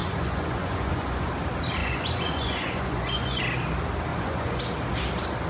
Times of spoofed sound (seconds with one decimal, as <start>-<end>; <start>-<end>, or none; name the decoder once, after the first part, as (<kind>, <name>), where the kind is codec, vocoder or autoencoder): 0.0-1.3 (vocoder, Vocos); 1.8-3.4; 4.1-4.6